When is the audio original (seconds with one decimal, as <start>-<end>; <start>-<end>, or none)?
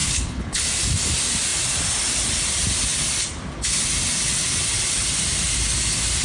0.6-6.2